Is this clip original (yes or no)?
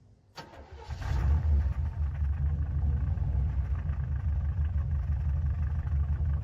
no